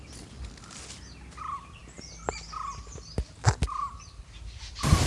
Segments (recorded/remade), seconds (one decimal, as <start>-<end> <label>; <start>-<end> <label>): 0.0-5.1 recorded